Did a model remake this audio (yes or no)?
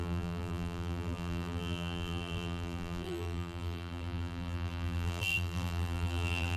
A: yes